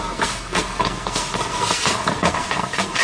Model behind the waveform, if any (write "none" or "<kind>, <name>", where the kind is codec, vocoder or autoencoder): codec, SNAC